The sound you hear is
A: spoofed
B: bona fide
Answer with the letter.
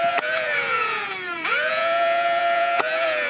A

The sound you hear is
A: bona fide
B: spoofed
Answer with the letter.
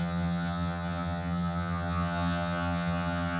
B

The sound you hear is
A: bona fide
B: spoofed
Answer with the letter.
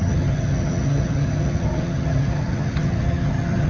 B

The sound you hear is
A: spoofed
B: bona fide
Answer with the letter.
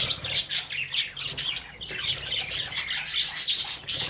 B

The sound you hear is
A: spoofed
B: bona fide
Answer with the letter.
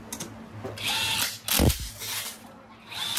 B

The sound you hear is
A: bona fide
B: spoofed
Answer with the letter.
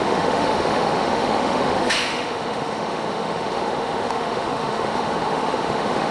B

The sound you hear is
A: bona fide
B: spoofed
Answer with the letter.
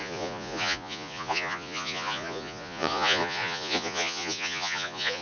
B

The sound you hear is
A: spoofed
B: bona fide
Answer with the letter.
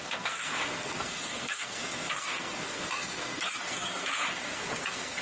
A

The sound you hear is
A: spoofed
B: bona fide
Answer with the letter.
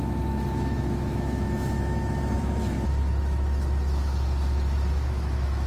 A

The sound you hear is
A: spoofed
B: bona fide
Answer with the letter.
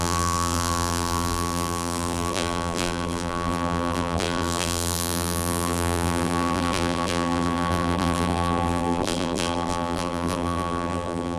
A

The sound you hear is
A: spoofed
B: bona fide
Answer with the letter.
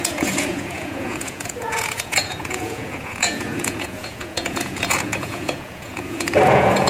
A